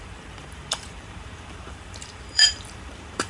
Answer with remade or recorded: remade